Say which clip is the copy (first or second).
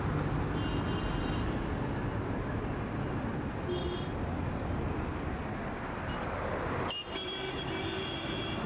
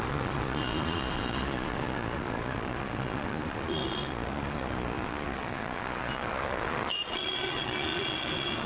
second